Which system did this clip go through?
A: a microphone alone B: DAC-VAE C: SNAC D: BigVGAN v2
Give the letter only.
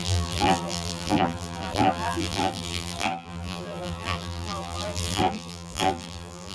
D